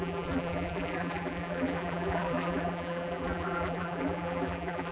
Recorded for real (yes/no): no